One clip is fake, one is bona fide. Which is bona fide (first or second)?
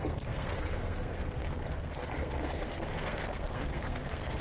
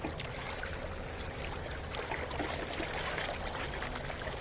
second